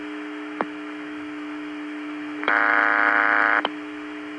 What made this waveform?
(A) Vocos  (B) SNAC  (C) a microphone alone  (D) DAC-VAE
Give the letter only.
D